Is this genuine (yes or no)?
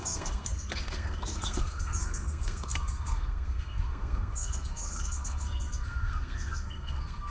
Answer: no